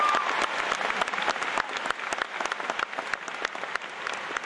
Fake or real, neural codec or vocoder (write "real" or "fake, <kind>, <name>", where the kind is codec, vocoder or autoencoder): real